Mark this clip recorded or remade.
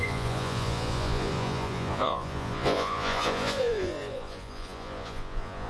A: remade